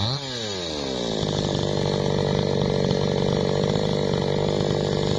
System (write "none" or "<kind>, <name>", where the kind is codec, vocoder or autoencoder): none